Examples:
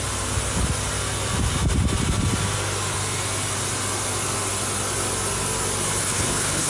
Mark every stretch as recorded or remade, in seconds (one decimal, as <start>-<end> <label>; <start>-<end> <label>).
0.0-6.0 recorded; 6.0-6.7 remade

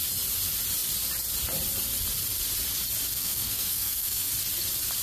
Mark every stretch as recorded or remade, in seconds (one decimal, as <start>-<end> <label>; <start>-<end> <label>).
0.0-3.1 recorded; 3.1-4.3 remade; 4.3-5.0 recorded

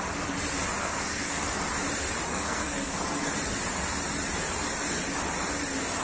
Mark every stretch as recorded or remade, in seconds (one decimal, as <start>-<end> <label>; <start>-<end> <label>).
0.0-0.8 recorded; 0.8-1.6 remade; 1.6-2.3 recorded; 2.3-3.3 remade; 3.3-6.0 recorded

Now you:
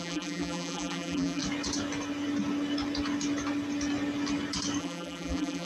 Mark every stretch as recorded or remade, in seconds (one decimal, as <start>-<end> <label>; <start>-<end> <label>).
0.0-1.4 remade; 1.4-4.8 recorded; 4.8-5.6 remade

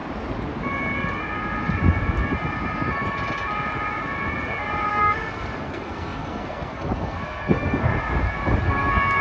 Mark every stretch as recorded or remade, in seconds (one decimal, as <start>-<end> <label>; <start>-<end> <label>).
0.0-4.9 recorded; 4.9-7.9 remade; 7.9-8.6 recorded; 8.6-9.2 remade

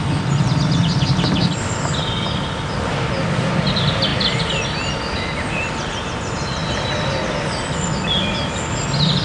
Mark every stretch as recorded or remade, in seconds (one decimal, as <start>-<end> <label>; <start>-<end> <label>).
0.0-9.2 recorded

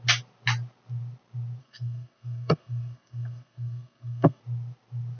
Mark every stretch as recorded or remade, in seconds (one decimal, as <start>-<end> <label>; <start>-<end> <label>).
0.0-1.6 recorded; 1.6-4.4 remade; 4.4-5.2 recorded